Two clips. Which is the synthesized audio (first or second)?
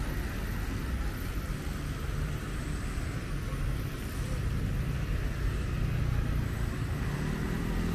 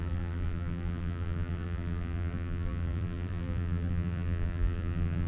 second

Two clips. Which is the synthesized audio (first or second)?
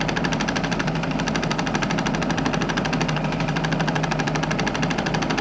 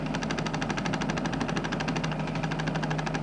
first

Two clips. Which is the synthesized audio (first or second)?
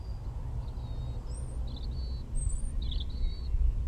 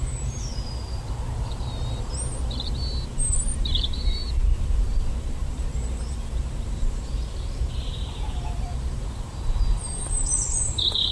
second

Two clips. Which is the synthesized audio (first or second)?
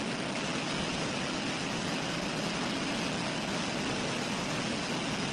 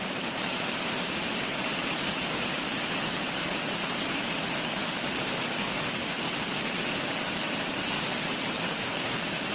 second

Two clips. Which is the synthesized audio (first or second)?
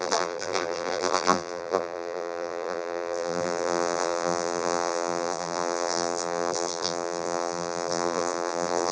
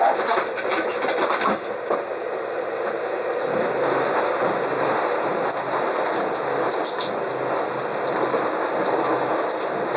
first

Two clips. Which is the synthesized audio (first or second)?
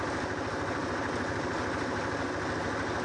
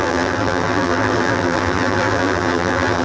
second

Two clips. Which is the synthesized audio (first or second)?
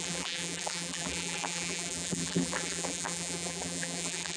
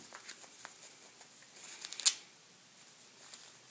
first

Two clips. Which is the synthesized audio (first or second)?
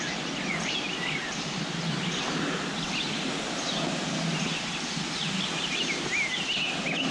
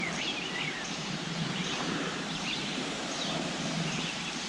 second